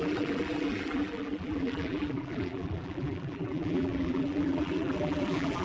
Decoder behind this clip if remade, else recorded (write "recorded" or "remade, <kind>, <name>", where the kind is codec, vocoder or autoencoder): remade, vocoder, BigVGAN v2